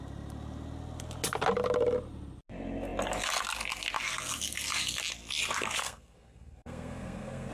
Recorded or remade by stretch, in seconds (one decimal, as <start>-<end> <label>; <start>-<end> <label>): 0.0-5.8 recorded; 5.8-7.5 remade